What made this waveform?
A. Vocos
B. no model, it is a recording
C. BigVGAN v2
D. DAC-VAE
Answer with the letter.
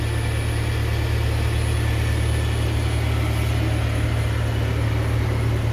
B